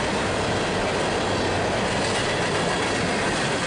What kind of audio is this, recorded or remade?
recorded